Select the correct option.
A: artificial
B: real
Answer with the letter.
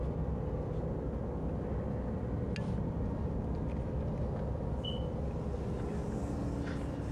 B